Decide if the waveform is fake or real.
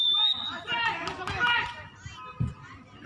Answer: real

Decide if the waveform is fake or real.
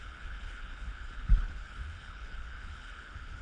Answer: fake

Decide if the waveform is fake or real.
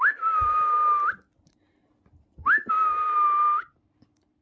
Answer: real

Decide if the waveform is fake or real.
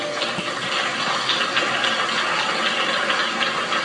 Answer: real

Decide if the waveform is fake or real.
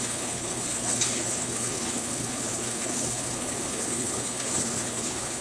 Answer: fake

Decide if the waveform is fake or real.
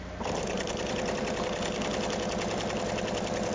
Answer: real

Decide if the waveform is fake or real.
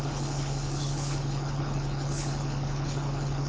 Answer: fake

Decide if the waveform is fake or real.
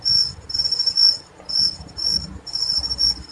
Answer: real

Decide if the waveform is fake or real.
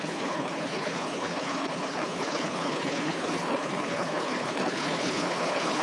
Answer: fake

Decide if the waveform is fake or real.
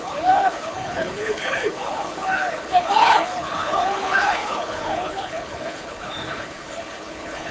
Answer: fake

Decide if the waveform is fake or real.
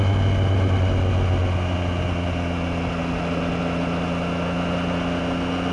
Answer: real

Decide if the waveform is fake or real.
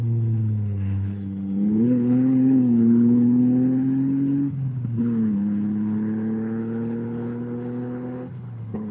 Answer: fake